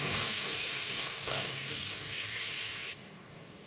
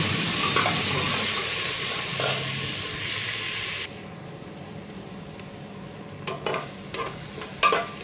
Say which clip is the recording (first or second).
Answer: second